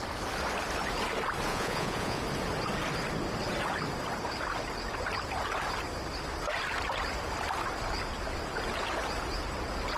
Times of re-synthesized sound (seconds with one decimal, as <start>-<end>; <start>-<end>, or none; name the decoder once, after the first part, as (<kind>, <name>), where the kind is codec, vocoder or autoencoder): 1.5-2.2 (vocoder, Vocos)